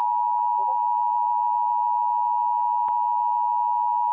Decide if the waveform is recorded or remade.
recorded